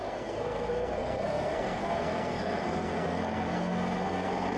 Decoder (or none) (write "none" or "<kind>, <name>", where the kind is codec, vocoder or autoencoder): codec, SNAC